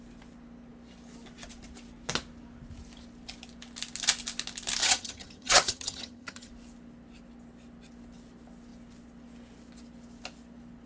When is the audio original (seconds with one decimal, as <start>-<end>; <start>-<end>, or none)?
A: 0.0-4.8; 6.5-10.9